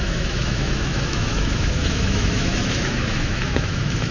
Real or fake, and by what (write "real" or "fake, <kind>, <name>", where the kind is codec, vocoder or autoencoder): fake, autoencoder, DAC-VAE